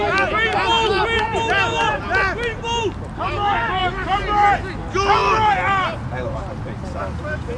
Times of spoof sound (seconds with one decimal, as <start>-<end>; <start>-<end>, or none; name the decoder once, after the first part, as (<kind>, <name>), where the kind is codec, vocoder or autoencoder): none